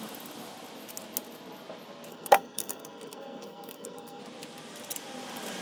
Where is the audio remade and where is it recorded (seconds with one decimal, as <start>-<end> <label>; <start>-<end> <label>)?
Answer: 0.0-2.1 recorded; 2.1-4.2 remade; 4.2-5.6 recorded